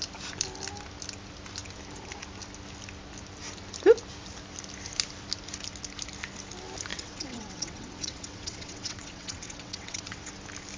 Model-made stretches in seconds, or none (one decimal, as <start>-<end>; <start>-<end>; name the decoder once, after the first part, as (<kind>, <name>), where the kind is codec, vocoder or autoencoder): 6.9-10.3 (vocoder, WaveNeXt)